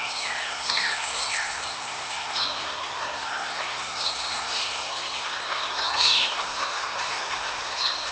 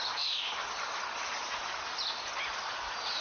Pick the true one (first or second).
second